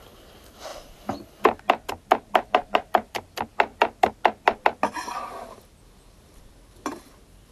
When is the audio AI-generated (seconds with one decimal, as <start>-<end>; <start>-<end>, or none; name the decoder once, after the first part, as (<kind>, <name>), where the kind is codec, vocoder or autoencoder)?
none